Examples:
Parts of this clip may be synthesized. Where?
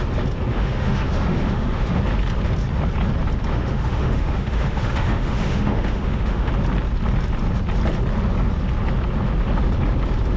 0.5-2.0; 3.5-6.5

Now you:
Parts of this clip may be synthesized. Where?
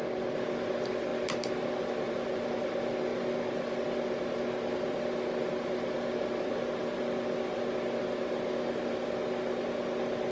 none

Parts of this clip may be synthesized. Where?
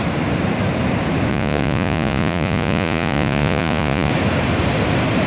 1.3-4.1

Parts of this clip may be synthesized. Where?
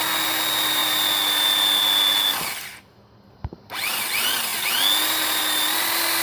none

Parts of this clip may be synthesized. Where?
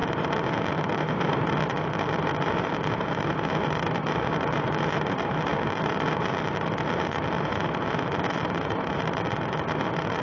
0.0-10.2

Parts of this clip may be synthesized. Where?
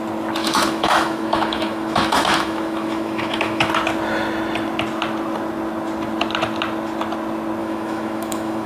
0.4-3.7; 7.6-8.7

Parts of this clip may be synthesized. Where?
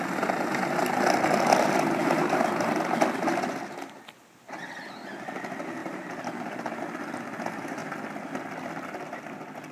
2.0-2.7; 5.8-6.8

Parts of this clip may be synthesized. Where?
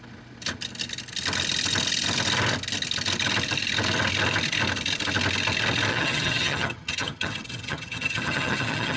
5.9-9.0